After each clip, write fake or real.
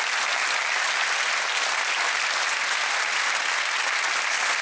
real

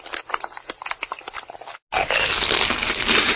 real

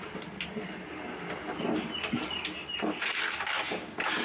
real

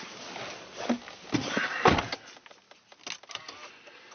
real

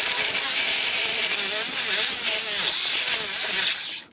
real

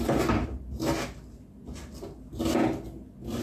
real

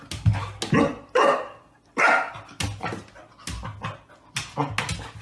real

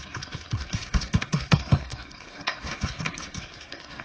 fake